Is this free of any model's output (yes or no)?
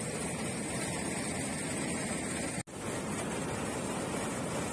yes